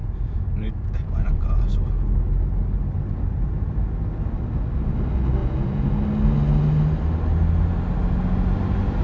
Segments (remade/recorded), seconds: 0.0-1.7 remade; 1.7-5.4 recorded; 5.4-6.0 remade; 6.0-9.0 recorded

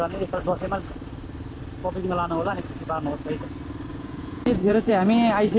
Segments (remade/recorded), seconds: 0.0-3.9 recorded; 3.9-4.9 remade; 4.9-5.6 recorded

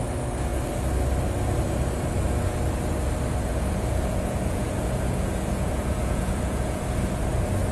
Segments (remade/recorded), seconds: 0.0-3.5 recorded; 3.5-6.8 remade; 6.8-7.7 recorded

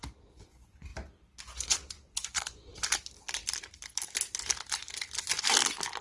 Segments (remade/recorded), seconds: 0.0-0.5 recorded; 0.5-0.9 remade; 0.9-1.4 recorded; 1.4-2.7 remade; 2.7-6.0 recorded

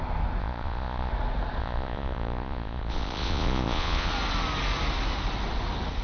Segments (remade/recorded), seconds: 0.0-0.4 recorded; 0.4-1.1 remade; 1.1-1.6 recorded; 1.6-4.1 remade; 4.1-6.0 recorded

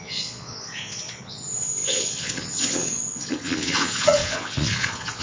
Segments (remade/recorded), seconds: 0.0-5.2 remade

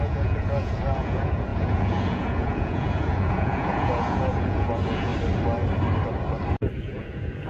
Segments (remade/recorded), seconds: 0.0-5.1 remade; 5.1-6.8 recorded; 6.8-7.5 remade